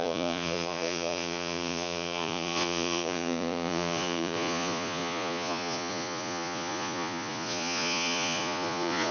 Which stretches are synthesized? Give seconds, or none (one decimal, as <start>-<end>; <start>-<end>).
0.0-9.1